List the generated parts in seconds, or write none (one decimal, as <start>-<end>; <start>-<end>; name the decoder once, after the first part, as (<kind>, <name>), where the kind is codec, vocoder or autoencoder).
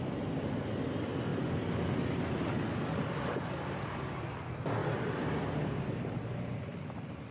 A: 4.8-6.2 (vocoder, BigVGAN v2)